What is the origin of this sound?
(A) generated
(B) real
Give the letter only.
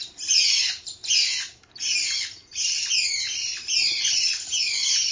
B